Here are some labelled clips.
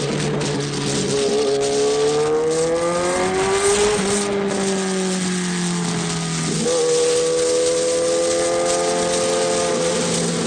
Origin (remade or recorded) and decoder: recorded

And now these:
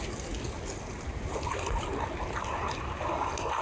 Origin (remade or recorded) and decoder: recorded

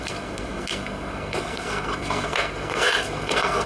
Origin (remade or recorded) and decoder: remade, codec, SNAC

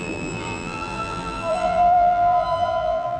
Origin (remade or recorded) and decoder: remade, vocoder, BigVGAN v2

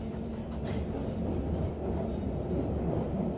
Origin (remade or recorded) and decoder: recorded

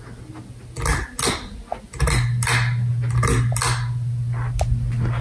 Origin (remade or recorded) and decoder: recorded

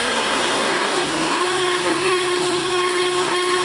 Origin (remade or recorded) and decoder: remade, codec, SNAC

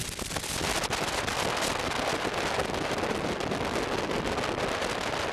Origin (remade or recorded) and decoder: recorded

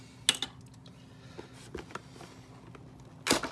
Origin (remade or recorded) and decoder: recorded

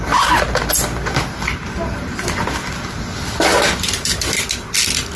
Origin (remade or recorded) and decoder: recorded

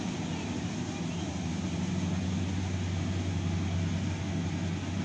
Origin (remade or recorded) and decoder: recorded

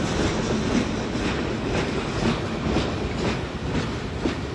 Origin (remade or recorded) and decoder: recorded